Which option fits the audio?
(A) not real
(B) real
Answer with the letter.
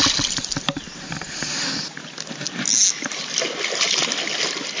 B